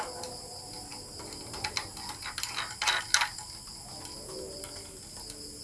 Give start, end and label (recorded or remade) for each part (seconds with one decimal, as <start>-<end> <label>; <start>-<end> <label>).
0.0-5.6 recorded